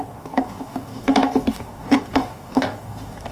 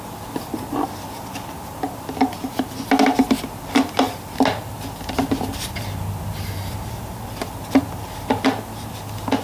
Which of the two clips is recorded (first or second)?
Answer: second